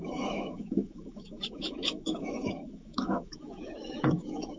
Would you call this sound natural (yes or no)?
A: no